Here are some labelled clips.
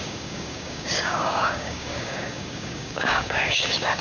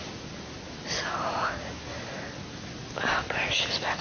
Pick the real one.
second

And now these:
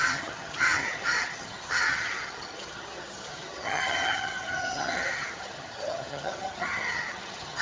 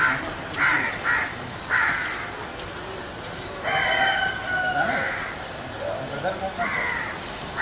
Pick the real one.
second